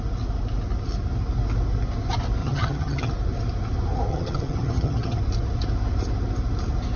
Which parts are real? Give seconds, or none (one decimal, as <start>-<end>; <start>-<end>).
0.0-2.4; 3.1-4.1; 5.2-7.0